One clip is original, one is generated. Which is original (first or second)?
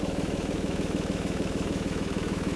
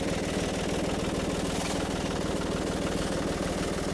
second